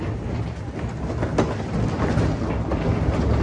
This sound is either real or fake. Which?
real